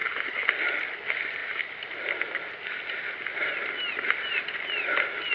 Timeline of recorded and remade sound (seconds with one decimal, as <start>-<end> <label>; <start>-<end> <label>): 0.0-5.3 recorded